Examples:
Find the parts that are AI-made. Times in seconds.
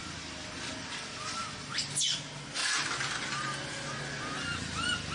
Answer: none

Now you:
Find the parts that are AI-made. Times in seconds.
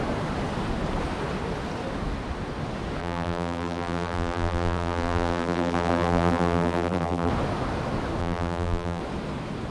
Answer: 3.0-7.3; 8.2-9.0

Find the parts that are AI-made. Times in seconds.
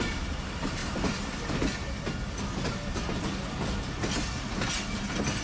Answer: none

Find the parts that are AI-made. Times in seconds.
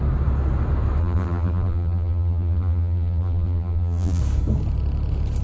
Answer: 1.0-4.2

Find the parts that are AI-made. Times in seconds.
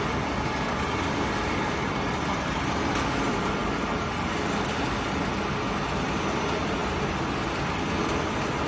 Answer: none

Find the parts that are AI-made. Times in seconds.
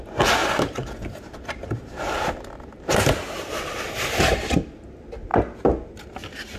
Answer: 0.4-3.8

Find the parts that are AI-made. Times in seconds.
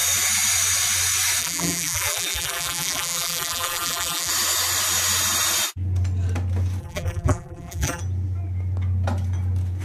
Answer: 1.4-4.3; 6.8-8.0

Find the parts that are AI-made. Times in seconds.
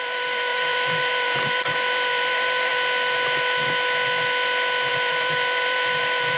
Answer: 0.0-2.7; 4.9-6.4